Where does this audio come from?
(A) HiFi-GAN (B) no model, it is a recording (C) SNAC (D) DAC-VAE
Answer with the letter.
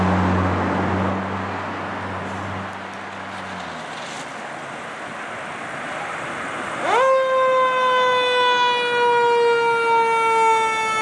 B